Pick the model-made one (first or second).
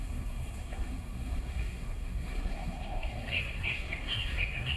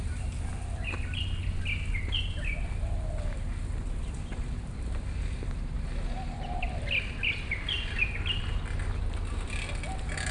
first